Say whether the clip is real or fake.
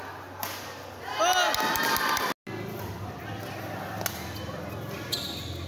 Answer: real